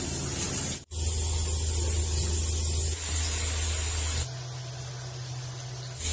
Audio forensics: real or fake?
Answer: real